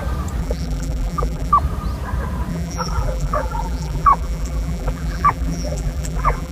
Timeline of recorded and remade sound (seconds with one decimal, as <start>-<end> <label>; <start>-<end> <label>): 0.0-0.4 recorded; 0.4-1.5 remade; 1.5-2.5 recorded; 2.5-6.5 remade